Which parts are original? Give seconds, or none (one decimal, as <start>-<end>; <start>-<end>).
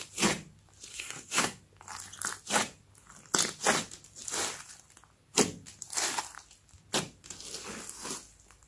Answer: 0.0-0.9; 1.6-8.7